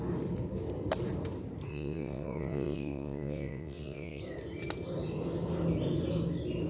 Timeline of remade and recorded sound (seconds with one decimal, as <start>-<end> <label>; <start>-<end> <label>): 0.0-1.7 recorded; 1.7-4.2 remade; 4.2-6.7 recorded